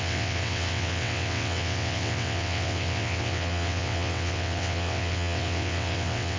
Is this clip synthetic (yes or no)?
yes